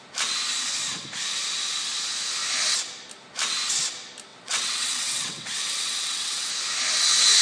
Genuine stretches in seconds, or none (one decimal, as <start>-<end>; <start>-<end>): 0.0-4.3; 6.5-7.4